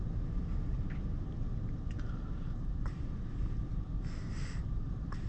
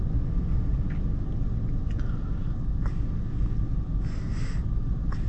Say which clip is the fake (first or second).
first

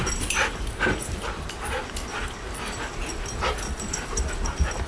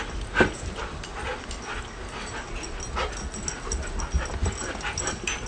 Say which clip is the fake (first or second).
first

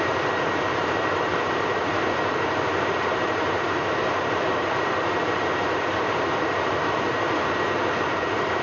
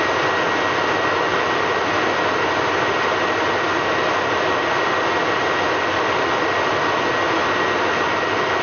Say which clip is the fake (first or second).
first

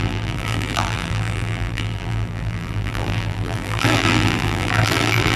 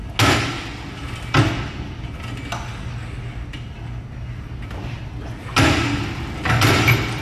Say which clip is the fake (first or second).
first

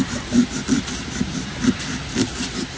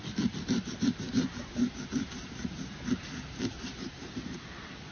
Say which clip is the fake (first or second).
second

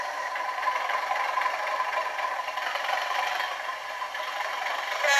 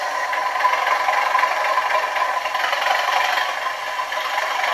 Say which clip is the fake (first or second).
first